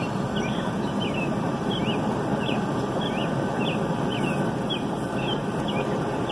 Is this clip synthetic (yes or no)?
yes